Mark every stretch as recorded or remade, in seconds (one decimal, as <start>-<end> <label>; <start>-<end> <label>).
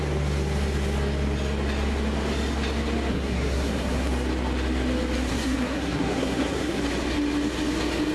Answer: 0.0-3.1 recorded; 3.1-4.1 remade; 4.1-5.3 recorded; 5.3-6.8 remade; 6.8-8.1 recorded